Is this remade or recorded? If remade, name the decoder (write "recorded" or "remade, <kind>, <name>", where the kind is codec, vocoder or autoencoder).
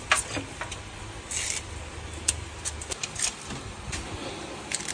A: recorded